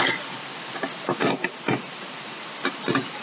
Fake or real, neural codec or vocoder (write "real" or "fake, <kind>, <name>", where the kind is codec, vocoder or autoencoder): real